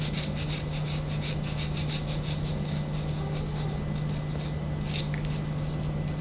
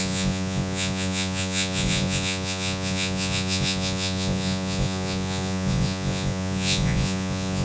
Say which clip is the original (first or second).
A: first